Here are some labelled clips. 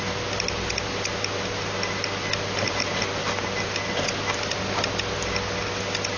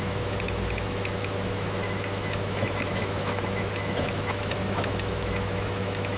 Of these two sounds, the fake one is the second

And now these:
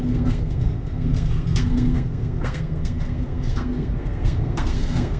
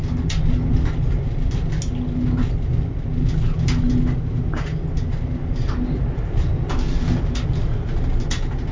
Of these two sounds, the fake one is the first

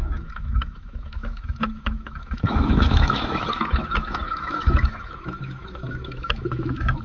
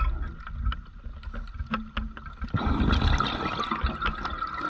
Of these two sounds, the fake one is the first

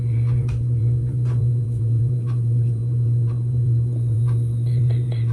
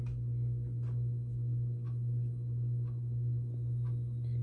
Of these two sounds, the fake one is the first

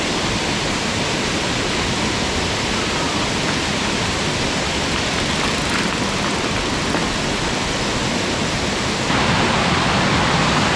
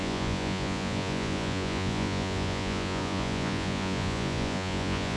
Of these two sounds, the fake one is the second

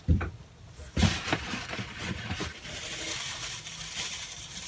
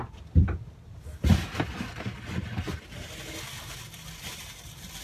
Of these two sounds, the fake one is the first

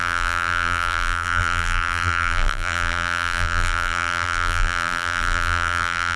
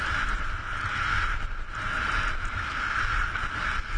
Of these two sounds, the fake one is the first